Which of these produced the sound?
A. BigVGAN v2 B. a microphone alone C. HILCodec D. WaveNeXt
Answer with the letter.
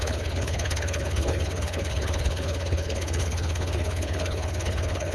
C